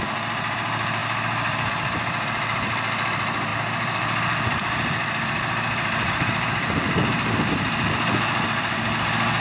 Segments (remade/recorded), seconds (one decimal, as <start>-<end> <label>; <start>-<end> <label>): 0.0-9.4 remade